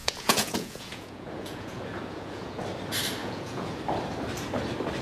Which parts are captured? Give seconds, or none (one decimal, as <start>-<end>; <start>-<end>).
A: 2.6-3.2; 3.8-5.0